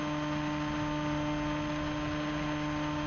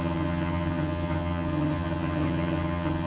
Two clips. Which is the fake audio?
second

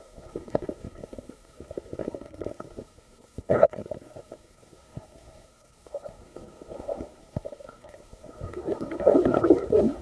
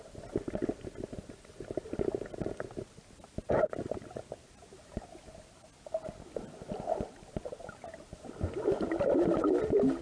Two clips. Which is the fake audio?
first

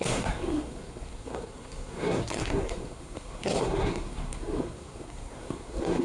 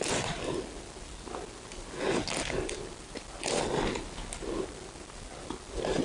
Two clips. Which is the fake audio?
first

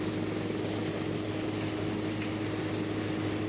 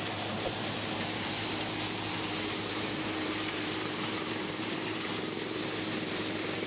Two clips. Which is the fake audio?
second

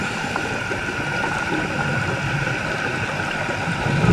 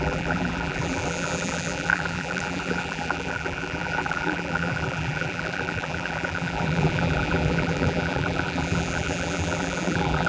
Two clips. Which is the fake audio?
second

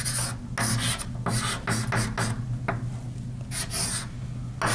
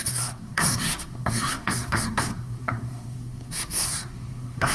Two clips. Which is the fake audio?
second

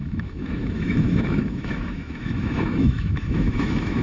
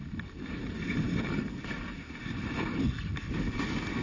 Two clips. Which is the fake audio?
first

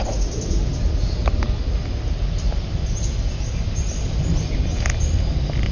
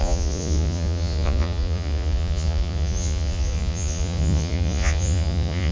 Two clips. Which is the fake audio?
second